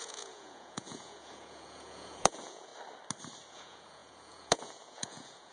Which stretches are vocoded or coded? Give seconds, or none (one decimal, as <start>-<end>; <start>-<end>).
0.0-2.7; 3.5-5.5